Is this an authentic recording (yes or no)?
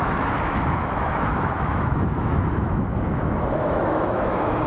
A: no